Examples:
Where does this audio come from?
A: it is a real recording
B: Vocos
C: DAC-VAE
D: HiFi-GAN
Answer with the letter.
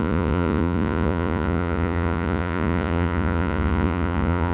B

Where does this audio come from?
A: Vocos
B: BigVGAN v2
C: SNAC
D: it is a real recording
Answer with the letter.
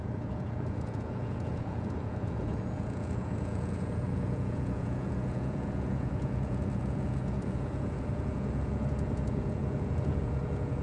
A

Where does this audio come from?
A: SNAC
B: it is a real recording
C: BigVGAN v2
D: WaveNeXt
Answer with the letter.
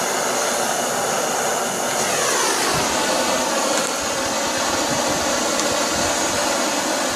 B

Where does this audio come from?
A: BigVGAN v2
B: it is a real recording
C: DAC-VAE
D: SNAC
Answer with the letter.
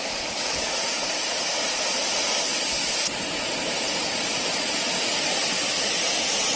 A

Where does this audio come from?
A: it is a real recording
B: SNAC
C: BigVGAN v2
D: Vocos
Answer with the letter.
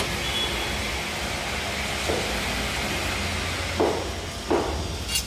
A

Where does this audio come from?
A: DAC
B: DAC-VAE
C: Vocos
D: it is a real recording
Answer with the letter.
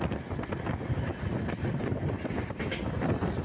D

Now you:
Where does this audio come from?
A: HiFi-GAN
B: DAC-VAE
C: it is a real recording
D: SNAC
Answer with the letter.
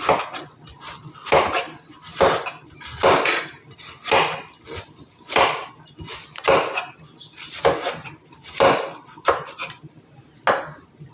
C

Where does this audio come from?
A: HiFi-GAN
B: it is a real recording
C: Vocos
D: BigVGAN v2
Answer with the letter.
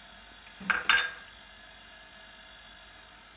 B